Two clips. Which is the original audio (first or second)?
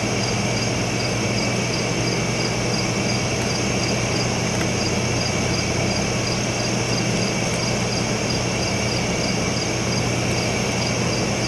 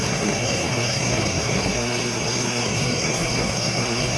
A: first